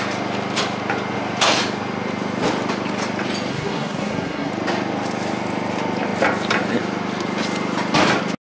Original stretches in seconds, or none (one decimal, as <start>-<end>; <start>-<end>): 0.0-3.5; 4.5-8.6